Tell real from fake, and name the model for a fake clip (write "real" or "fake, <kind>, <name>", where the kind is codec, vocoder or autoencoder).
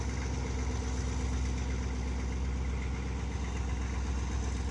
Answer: real